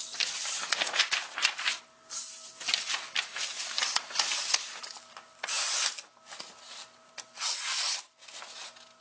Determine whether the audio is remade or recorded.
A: recorded